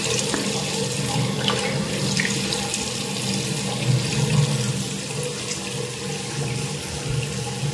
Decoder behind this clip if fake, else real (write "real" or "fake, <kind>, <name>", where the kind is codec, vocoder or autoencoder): real